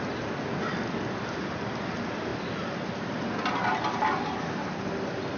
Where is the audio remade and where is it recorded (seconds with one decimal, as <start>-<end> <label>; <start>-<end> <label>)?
0.0-5.4 recorded